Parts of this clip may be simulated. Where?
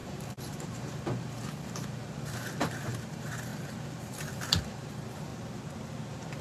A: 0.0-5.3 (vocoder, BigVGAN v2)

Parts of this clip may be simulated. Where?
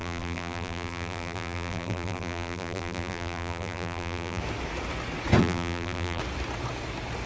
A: 0.0-4.4 (vocoder, BigVGAN v2); 5.4-6.2